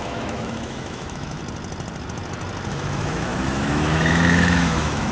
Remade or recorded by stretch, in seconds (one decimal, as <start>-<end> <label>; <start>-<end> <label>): 0.0-1.4 remade; 1.4-2.7 recorded; 2.7-5.1 remade